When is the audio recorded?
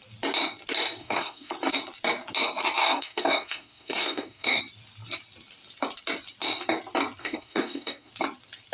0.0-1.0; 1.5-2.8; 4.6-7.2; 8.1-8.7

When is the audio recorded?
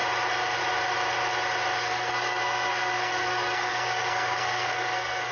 0.0-1.8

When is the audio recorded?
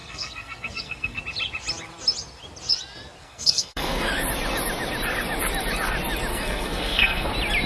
1.2-3.2; 4.1-6.3; 7.3-7.7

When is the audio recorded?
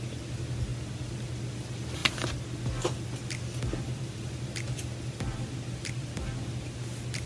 0.0-7.3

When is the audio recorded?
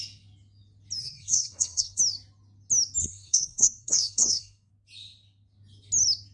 0.0-1.0; 2.0-3.0; 4.7-6.3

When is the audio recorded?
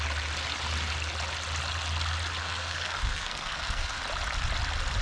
0.0-2.4; 4.0-5.0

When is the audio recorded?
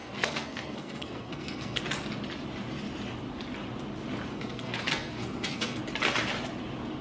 1.8-4.3; 5.8-7.0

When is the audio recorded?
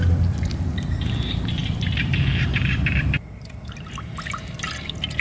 0.0-5.2